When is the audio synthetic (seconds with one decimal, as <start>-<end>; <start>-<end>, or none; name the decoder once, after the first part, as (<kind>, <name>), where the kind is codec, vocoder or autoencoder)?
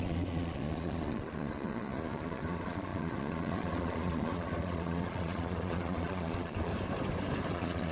0.0-6.7 (vocoder, Vocos); 7.5-7.9